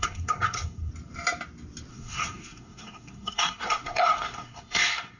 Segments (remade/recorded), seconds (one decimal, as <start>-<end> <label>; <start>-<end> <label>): 0.0-0.9 remade; 0.9-1.9 recorded; 1.9-5.2 remade